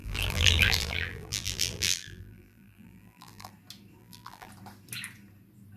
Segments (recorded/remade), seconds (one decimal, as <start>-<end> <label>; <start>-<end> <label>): 0.0-3.5 remade; 3.5-4.0 recorded; 4.0-4.5 remade; 4.5-5.8 recorded